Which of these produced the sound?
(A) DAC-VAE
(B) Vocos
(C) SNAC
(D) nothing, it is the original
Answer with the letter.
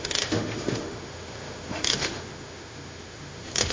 A